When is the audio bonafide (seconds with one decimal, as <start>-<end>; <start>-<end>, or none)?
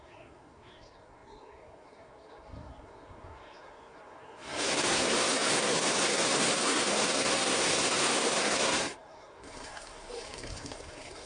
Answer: none